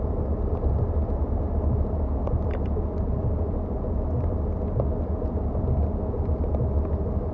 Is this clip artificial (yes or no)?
no